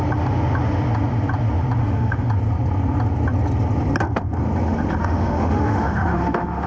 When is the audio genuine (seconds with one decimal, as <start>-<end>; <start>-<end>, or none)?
0.0-1.8; 2.3-5.0